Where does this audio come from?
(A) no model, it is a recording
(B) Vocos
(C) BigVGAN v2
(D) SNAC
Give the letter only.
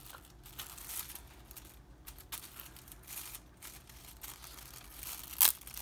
A